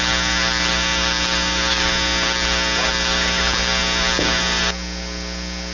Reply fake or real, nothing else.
real